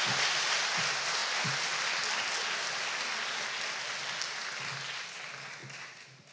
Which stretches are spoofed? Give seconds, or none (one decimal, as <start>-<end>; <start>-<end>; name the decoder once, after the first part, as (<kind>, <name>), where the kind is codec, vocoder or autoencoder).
none